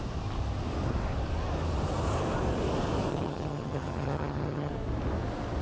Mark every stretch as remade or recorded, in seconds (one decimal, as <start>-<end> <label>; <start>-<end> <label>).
0.0-3.1 recorded; 3.1-4.7 remade; 4.7-5.6 recorded